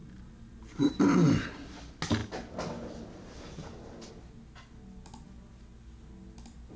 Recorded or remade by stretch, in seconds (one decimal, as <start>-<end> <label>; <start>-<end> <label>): 0.0-1.8 remade; 1.8-6.8 recorded